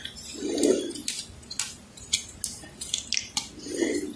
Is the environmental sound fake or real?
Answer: real